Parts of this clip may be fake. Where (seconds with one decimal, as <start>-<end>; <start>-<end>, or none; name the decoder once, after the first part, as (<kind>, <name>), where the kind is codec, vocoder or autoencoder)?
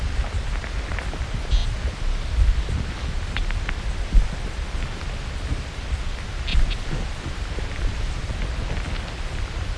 6.5-8.2 (vocoder, BigVGAN v2)